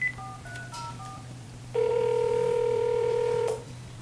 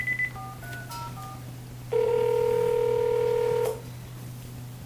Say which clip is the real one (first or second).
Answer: second